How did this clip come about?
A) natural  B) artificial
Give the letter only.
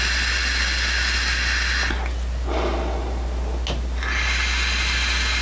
A